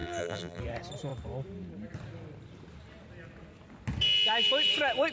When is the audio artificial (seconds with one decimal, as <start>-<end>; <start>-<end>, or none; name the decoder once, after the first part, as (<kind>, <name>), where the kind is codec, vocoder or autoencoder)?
0.0-0.6 (vocoder, BigVGAN v2)